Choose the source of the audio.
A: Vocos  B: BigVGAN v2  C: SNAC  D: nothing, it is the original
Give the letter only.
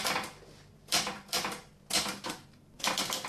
D